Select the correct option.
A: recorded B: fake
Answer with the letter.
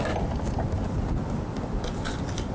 A